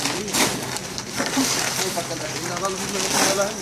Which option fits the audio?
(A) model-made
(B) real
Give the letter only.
B